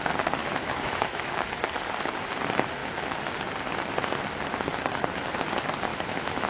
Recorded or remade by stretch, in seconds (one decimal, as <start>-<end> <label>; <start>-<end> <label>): 0.0-0.4 recorded; 0.4-1.4 remade; 1.4-5.9 recorded; 5.9-6.5 remade